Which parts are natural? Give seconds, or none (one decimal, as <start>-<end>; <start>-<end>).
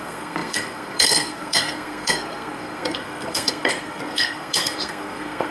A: none